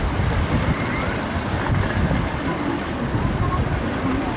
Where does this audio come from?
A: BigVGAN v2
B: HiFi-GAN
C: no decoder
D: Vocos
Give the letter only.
C